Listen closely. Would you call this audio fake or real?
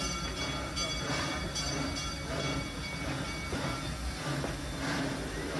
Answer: real